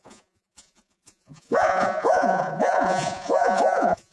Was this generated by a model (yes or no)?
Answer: yes